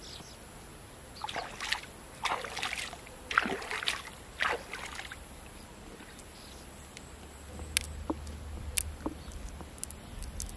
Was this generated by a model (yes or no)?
no